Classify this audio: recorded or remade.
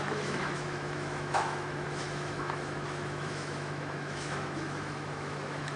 remade